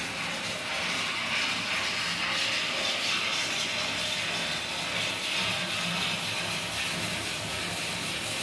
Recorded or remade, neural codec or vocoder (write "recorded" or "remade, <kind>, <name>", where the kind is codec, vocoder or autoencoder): recorded